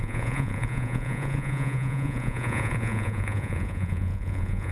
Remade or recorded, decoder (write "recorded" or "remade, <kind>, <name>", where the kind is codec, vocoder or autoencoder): remade, vocoder, Vocos